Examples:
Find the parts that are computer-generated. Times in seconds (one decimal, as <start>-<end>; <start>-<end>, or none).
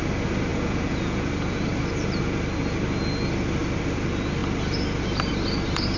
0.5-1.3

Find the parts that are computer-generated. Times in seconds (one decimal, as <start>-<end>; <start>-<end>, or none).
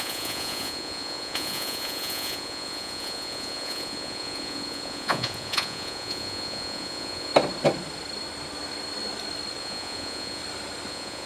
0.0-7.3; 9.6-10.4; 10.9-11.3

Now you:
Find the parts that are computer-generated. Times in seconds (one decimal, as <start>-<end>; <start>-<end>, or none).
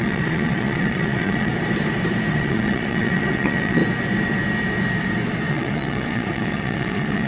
0.0-1.5; 2.3-3.8; 5.5-7.3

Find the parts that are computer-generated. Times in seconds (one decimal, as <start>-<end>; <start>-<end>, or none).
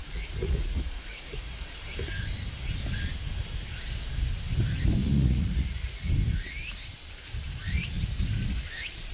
0.0-1.8; 5.0-6.1